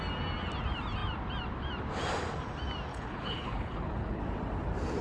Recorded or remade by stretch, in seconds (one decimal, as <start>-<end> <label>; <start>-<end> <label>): 0.0-2.9 recorded; 2.9-4.2 remade; 4.2-5.0 recorded

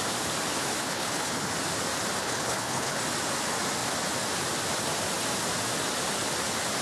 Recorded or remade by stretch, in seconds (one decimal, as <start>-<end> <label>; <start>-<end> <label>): 0.0-0.8 recorded; 0.8-1.5 remade; 1.5-2.2 recorded; 2.2-3.0 remade; 3.0-6.8 recorded